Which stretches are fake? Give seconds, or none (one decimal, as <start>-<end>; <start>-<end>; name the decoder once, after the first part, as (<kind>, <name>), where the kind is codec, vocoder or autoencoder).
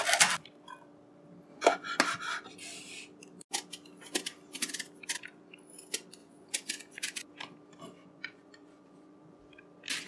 1.5-2.0 (vocoder, Vocos); 6.2-7.3; 8.0-9.4